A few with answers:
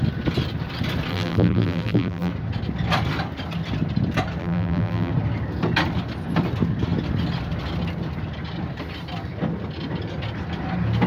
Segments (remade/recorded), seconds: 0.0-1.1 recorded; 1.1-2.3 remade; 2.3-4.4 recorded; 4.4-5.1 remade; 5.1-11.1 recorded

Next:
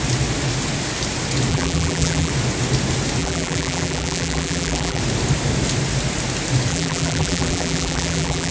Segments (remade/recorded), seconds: 0.0-1.5 recorded; 1.5-2.3 remade; 2.3-3.2 recorded; 3.2-5.0 remade; 5.0-6.7 recorded; 6.7-8.5 remade

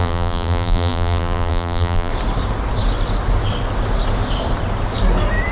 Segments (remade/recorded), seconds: 0.0-2.1 remade; 2.1-5.5 recorded